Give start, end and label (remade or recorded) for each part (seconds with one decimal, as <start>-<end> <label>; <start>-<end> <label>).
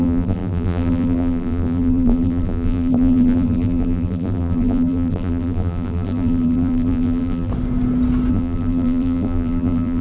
0.0-7.5 remade; 7.5-8.3 recorded; 8.3-10.0 remade